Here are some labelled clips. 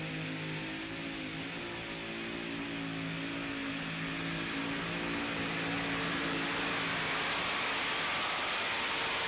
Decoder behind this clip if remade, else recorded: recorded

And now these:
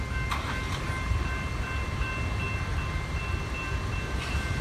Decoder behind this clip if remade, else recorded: recorded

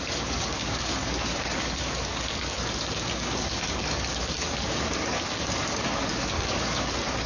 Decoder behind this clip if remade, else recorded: remade, codec, DAC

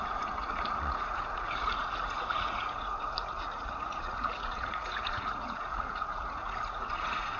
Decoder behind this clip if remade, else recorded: remade, vocoder, Vocos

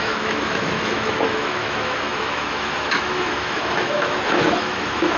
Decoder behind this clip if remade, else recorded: remade, autoencoder, DAC-VAE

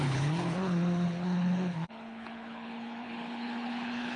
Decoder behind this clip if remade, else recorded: remade, codec, HILCodec